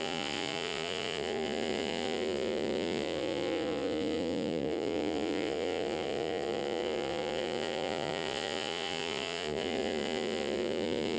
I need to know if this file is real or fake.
fake